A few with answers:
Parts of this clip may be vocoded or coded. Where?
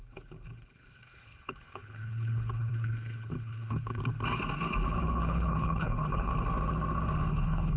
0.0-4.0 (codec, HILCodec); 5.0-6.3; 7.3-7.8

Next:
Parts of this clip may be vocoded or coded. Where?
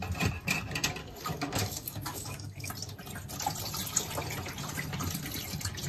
1.0-2.7 (codec, DAC)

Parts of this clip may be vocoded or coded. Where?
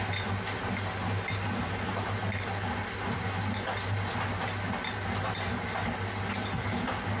none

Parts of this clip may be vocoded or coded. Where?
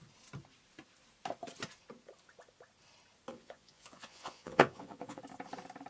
3.3-5.2 (vocoder, Vocos)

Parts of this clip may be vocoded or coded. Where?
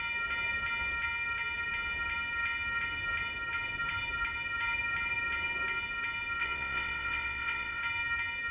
6.4-7.8 (vocoder, WaveNeXt)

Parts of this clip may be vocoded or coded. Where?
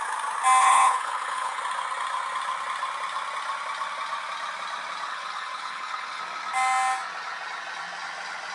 0.6-1.6 (codec, HILCodec); 5.1-6.2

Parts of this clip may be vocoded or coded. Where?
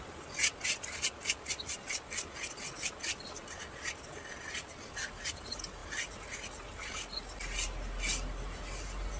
none